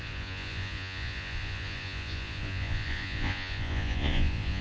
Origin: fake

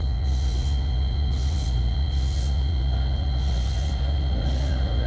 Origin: fake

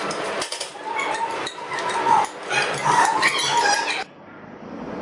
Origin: real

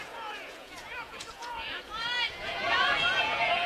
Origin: fake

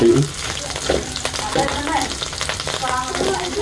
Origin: real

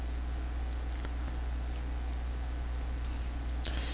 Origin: real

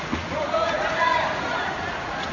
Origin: fake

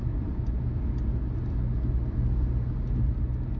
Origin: real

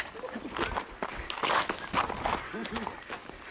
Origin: real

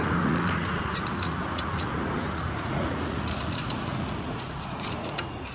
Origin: fake